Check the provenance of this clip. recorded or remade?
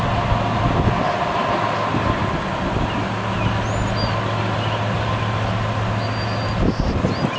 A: recorded